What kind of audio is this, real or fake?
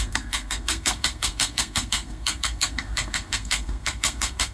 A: fake